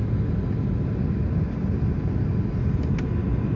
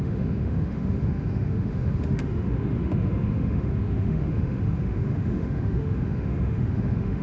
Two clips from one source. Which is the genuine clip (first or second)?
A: first